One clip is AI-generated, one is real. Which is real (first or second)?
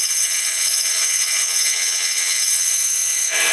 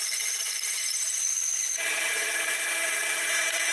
second